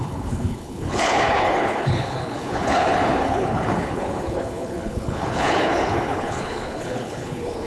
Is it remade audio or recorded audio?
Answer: remade